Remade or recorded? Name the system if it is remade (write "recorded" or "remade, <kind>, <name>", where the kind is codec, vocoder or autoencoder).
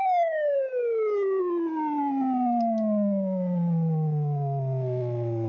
recorded